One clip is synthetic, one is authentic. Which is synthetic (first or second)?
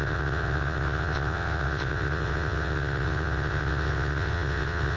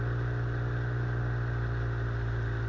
first